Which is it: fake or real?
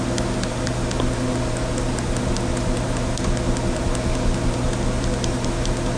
real